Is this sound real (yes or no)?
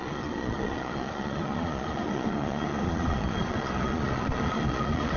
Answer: no